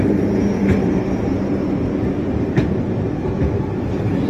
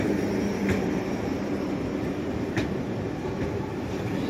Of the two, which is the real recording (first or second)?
first